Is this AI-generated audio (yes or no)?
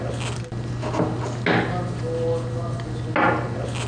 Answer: no